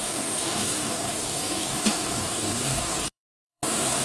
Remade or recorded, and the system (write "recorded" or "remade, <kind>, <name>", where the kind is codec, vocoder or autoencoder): remade, codec, DAC